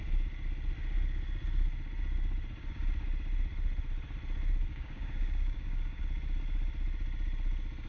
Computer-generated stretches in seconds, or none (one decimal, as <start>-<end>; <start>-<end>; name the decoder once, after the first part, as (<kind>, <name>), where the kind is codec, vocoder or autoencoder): 4.7-6.0 (codec, DAC)